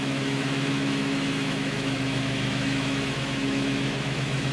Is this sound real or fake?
fake